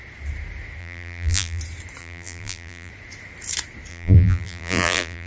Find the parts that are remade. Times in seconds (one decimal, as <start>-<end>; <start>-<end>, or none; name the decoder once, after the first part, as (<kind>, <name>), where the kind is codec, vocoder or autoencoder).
0.8-1.6 (vocoder, BigVGAN v2); 2.0-2.9; 3.9-5.3